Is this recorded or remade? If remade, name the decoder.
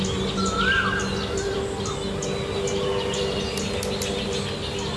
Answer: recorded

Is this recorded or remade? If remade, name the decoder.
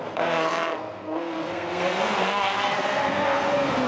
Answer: remade, codec, SNAC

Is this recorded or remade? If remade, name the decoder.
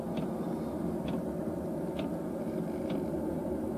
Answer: recorded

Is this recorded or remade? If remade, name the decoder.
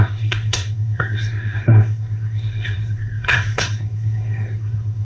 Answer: remade, codec, SNAC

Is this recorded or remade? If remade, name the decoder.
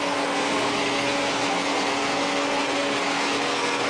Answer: remade, codec, SNAC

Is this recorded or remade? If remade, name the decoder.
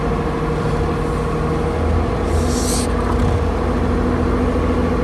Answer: recorded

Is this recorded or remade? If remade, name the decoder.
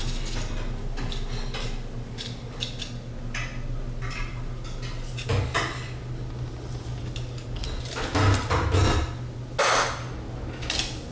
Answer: recorded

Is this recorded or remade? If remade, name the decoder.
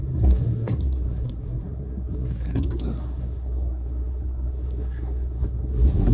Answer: remade, codec, SNAC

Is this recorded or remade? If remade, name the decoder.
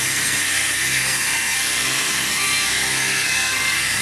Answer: remade, codec, SNAC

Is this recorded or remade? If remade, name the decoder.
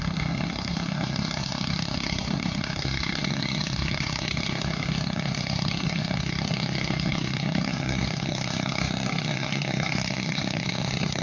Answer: remade, codec, SNAC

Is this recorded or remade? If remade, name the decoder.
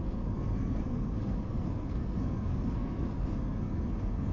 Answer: remade, codec, SNAC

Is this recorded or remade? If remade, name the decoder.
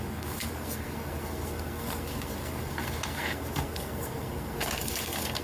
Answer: remade, codec, SNAC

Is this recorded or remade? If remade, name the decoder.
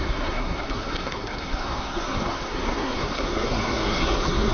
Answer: remade, codec, SNAC